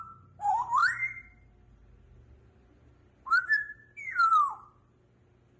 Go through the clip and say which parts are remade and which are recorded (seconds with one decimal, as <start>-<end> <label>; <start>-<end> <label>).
0.0-5.6 recorded